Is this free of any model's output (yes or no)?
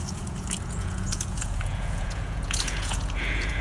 no